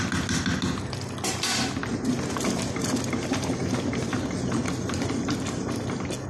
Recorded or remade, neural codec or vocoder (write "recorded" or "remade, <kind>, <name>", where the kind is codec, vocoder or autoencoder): recorded